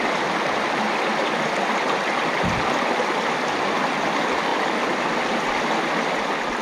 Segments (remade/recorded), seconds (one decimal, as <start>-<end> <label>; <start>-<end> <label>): 0.0-6.6 recorded